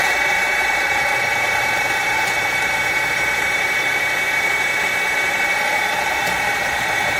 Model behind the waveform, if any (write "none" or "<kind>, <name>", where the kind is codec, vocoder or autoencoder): vocoder, BigVGAN v2